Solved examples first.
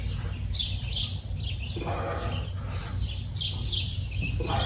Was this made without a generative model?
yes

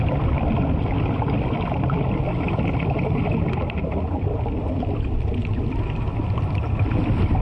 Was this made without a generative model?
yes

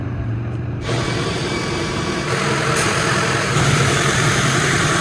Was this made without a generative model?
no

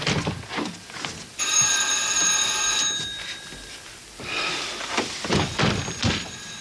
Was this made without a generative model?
no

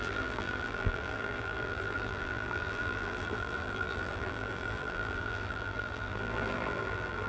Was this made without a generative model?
no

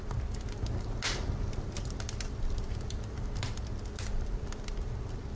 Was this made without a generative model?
yes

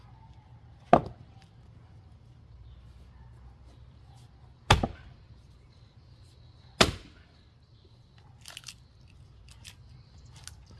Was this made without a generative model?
yes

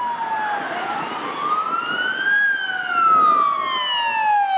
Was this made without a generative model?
yes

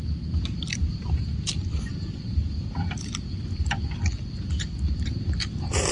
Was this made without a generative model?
no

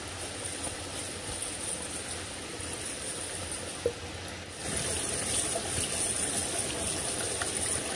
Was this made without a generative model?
yes